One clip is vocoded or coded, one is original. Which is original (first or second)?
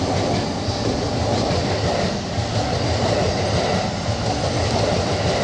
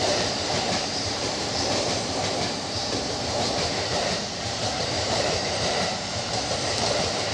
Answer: first